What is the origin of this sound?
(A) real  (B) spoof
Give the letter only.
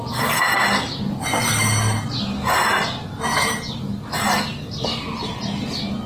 A